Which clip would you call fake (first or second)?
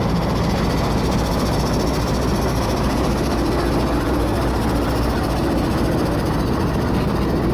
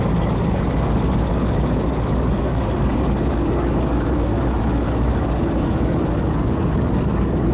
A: second